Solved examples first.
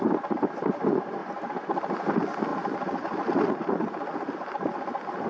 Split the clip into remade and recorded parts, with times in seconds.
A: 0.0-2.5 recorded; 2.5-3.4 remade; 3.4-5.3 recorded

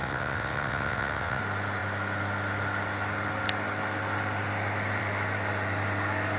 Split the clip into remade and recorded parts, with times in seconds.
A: 0.0-1.4 remade; 1.4-6.4 recorded